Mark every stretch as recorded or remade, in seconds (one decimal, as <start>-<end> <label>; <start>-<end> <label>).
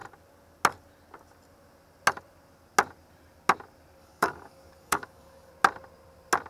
0.0-4.0 recorded; 4.0-5.5 remade; 5.5-6.5 recorded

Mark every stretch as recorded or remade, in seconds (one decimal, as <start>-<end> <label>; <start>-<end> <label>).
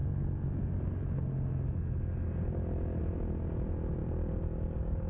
0.0-4.0 recorded; 4.0-5.1 remade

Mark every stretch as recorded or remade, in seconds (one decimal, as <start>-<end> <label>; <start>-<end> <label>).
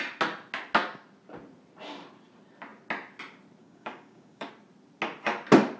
0.0-3.6 recorded; 3.6-4.5 remade; 4.5-5.8 recorded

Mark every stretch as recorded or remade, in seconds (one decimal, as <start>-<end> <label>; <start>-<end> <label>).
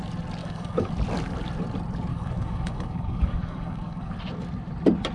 0.0-0.4 recorded; 0.4-0.9 remade; 0.9-2.1 recorded; 2.1-4.1 remade; 4.1-5.1 recorded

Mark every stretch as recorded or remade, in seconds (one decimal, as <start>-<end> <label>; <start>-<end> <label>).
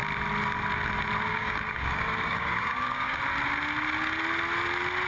0.0-1.3 recorded; 1.3-3.2 remade; 3.2-5.1 recorded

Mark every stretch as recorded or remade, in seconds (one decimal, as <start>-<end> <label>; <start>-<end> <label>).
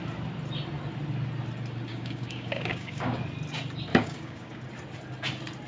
0.0-1.9 recorded; 1.9-3.2 remade; 3.2-3.9 recorded; 3.9-4.6 remade; 4.6-5.7 recorded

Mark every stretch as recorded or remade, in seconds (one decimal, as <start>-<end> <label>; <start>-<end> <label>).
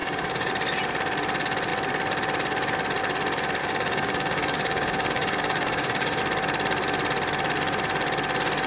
0.0-0.5 remade; 0.5-3.6 recorded; 3.6-6.2 remade; 6.2-8.7 recorded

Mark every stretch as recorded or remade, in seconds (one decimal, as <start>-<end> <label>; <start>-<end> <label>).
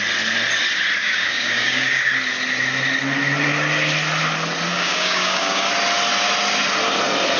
0.0-1.0 recorded; 1.0-2.1 remade; 2.1-4.7 recorded; 4.7-5.7 remade; 5.7-7.4 recorded